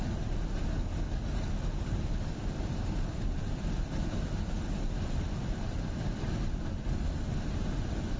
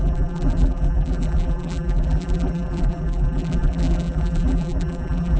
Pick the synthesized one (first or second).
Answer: second